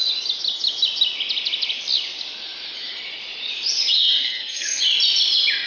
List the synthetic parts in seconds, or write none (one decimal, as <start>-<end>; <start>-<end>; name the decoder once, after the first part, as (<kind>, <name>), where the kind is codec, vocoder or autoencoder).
4.2-4.8 (codec, SNAC)